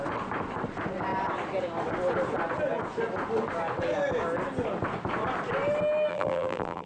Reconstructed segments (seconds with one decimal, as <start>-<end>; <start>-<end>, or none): 6.1-6.9